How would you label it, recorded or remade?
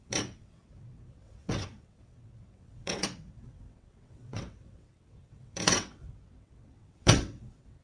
remade